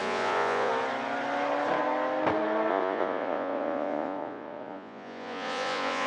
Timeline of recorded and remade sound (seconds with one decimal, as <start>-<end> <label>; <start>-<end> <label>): 0.0-0.7 remade; 0.7-2.7 recorded; 2.7-6.1 remade